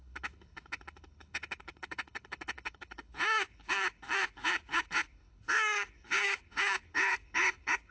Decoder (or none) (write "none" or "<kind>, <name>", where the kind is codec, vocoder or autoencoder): codec, HILCodec